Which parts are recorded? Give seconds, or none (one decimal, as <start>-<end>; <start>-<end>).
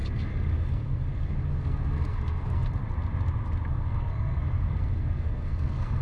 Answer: 2.8-3.7